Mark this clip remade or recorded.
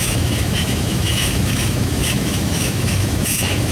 remade